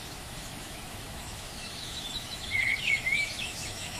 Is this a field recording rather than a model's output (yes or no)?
no